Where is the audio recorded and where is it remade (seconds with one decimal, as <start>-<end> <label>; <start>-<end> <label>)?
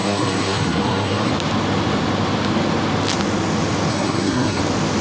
0.0-1.3 remade; 1.3-3.9 recorded; 3.9-4.6 remade; 4.6-5.0 recorded